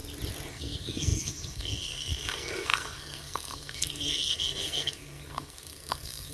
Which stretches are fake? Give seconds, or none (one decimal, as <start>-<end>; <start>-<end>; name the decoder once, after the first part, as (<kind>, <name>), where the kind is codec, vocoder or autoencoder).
0.5-6.3 (codec, SNAC)